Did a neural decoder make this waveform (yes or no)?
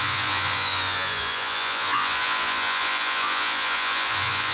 yes